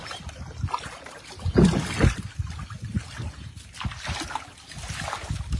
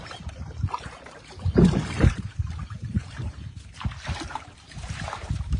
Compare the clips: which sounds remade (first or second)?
second